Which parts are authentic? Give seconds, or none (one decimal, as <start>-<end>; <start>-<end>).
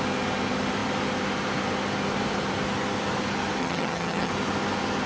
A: 0.0-3.6; 4.3-5.1